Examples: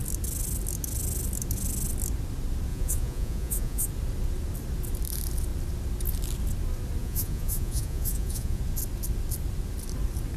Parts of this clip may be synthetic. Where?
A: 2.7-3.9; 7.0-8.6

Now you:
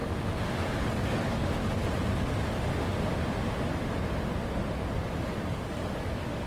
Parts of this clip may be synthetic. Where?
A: 0.9-1.6; 5.5-6.5

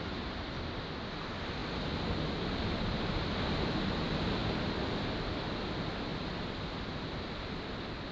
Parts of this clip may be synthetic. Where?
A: 4.4-5.0